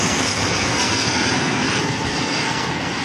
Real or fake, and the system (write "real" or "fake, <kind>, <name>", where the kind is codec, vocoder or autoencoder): fake, codec, SNAC